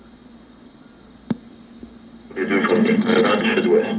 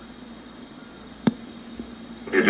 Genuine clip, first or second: first